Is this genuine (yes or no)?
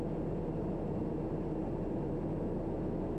yes